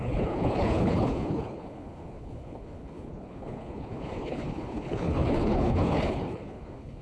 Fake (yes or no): yes